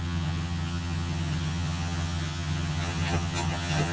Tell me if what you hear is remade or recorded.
remade